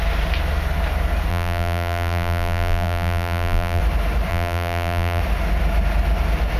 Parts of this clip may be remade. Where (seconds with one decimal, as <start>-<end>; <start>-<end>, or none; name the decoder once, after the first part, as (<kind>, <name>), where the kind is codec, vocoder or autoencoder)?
1.3-3.8 (vocoder, BigVGAN v2); 4.3-5.2